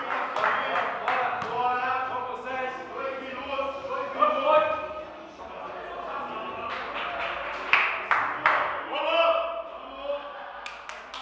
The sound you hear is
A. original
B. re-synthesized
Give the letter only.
A